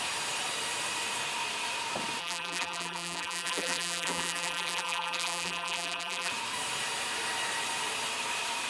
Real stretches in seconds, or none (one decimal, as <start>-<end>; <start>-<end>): 0.0-2.2; 6.3-8.7